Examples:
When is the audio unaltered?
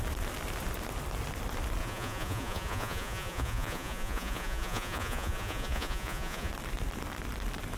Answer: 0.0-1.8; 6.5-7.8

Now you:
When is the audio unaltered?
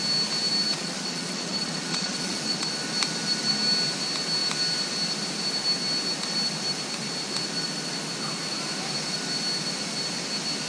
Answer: 0.0-0.7; 2.7-10.7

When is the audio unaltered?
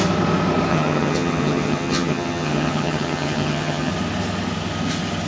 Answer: 0.0-0.7; 3.9-5.3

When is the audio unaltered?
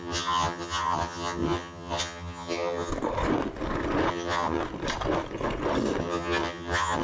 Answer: 2.9-4.1; 4.6-6.0